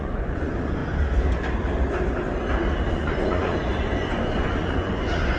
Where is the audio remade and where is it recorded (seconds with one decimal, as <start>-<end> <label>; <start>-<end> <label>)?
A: 0.0-0.8 remade; 0.8-2.9 recorded; 2.9-5.4 remade